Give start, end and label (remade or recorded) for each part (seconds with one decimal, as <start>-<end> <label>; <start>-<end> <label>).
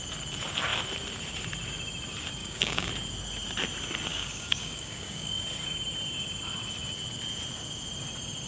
0.0-2.4 recorded; 2.4-2.9 remade; 2.9-4.1 recorded; 4.1-5.3 remade; 5.3-8.5 recorded